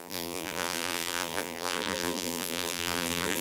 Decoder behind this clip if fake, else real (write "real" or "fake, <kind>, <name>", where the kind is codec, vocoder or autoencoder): fake, vocoder, BigVGAN v2